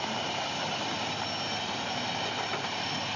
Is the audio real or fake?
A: real